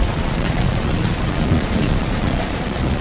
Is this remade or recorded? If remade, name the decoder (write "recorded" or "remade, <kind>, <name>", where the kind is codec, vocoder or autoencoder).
remade, vocoder, Vocos